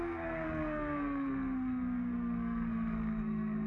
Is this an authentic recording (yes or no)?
no